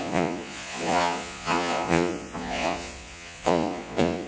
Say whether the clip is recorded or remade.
remade